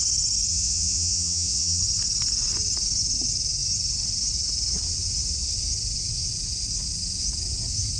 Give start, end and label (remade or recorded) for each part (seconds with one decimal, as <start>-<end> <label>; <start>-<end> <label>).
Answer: 0.0-0.5 recorded; 0.5-1.8 remade; 1.8-8.0 recorded